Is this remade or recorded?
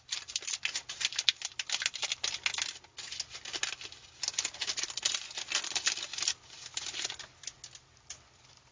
recorded